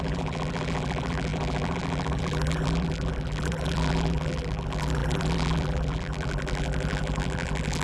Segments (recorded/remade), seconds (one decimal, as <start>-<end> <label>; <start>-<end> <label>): 0.0-7.8 remade